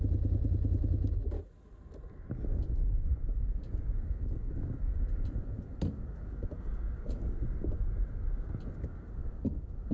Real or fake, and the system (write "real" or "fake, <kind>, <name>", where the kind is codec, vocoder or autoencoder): real